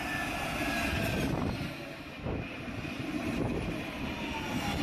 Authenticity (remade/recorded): recorded